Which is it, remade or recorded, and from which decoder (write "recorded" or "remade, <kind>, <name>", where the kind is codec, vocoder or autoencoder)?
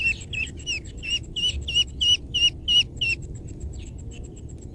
recorded